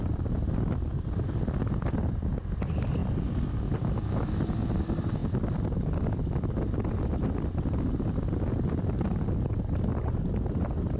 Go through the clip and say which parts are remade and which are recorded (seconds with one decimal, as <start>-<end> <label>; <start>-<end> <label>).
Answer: 0.0-11.0 recorded